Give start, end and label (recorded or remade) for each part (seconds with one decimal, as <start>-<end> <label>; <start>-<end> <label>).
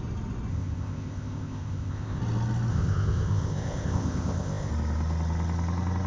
0.0-0.5 recorded; 0.5-2.2 remade; 2.2-2.7 recorded; 2.7-4.7 remade; 4.7-6.1 recorded